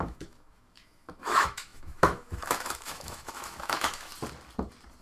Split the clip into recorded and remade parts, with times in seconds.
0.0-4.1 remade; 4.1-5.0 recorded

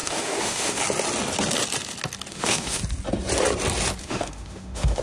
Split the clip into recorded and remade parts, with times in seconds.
0.0-0.8 remade; 0.8-2.3 recorded; 2.3-2.8 remade; 2.8-4.0 recorded; 4.0-5.0 remade

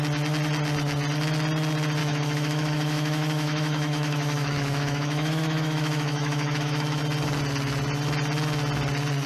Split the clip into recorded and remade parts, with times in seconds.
0.0-2.0 recorded; 2.0-7.0 remade; 7.0-9.3 recorded